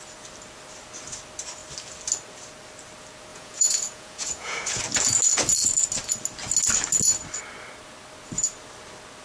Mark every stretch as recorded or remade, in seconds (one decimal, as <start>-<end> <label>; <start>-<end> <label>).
0.0-3.3 recorded; 3.3-4.8 remade; 4.8-9.2 recorded